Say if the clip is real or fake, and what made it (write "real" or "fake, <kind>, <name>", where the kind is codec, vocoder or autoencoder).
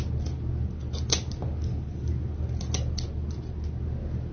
real